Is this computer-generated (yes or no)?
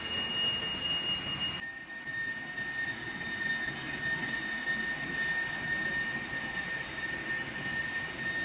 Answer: no